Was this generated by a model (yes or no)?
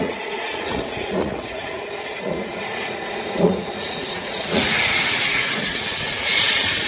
yes